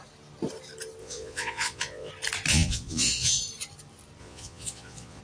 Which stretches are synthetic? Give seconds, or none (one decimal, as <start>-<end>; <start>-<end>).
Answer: 1.0-2.1; 2.5-3.4; 4.2-5.2